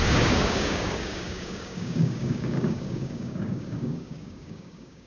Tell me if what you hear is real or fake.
fake